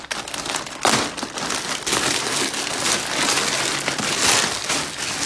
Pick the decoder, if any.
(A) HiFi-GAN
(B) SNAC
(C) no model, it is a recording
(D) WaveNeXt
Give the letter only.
C